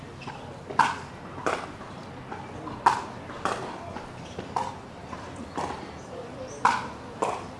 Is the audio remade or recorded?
recorded